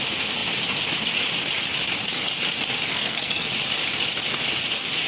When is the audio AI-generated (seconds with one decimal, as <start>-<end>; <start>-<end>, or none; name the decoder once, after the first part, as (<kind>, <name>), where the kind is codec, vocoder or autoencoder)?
2.9-3.5 (codec, SNAC)